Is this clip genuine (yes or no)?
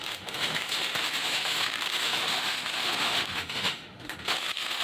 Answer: no